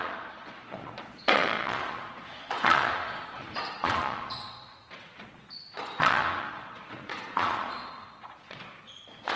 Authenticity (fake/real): fake